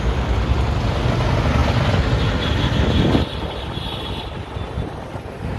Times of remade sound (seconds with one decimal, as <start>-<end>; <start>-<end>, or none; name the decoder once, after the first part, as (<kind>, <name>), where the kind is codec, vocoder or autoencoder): none